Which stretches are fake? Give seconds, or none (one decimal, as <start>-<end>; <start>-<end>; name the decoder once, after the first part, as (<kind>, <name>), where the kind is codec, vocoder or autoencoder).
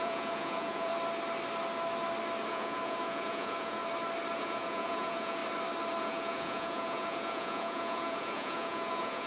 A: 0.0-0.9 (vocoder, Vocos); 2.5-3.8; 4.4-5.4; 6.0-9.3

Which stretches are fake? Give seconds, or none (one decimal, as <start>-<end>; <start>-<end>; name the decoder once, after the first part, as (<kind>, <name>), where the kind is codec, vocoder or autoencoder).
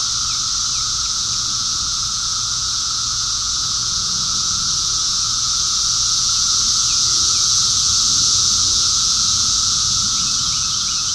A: 0.8-11.1 (vocoder, Vocos)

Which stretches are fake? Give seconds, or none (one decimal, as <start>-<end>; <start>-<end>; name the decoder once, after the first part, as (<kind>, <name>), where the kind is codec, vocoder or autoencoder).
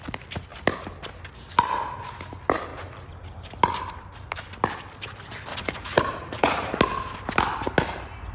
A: 5.5-6.8 (vocoder, Vocos)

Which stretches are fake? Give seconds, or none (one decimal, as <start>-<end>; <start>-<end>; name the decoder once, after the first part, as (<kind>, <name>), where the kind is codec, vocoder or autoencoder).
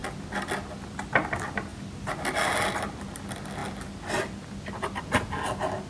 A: none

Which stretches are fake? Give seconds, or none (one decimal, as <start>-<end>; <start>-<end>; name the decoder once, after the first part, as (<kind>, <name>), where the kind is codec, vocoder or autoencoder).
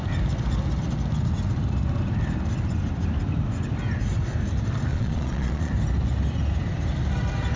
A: 4.9-5.7 (vocoder, Vocos)